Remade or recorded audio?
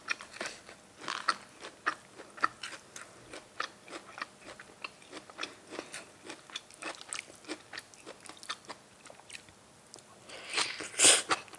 recorded